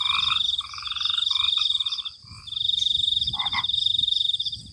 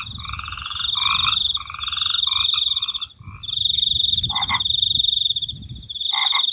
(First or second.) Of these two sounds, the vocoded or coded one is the second